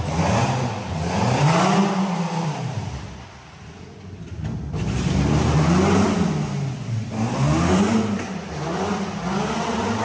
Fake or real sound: real